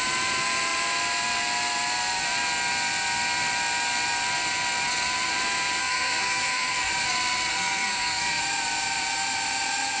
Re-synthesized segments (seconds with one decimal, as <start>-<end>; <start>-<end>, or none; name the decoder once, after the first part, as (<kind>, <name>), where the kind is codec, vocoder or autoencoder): 5.8-6.9 (codec, SNAC); 7.5-8.4